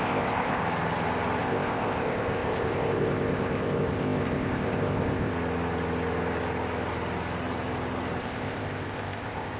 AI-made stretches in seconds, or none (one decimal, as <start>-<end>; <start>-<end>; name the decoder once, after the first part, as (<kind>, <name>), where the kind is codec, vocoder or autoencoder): 0.0-0.6 (codec, ZipCodec); 1.4-5.3; 8.2-9.6